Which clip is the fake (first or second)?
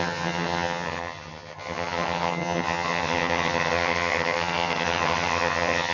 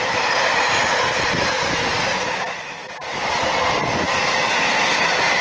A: first